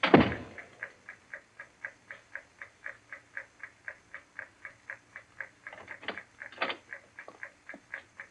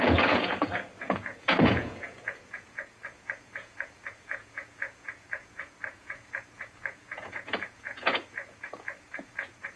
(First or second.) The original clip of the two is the first